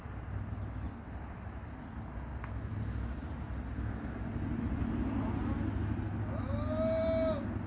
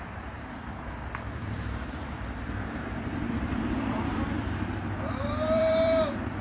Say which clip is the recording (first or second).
first